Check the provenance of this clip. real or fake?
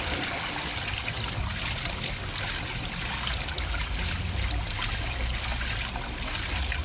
real